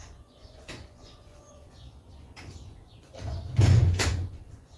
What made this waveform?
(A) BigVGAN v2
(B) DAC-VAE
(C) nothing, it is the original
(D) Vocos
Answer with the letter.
D